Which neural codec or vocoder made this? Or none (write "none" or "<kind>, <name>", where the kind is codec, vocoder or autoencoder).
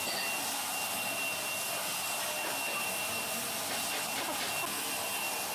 none